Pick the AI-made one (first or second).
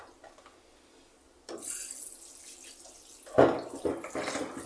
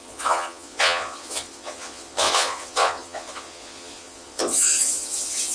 second